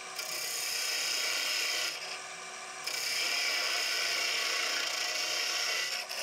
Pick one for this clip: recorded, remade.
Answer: recorded